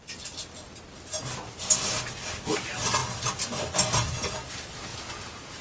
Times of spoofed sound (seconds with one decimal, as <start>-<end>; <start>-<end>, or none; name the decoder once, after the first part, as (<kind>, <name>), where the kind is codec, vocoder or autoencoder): 4.9-5.6 (vocoder, Vocos)